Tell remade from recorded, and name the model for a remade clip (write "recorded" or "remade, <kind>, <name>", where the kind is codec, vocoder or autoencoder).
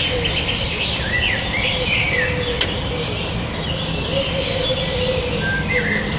recorded